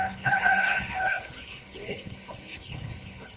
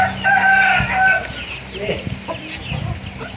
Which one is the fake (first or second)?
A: first